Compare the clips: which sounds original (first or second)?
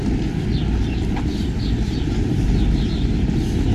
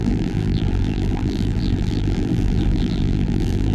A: first